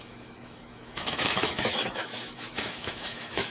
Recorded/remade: remade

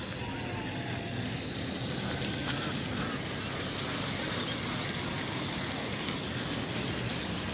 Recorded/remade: recorded